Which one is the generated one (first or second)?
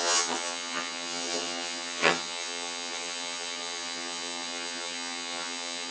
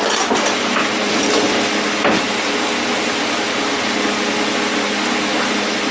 first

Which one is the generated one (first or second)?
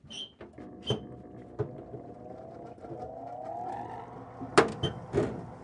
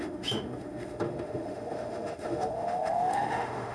second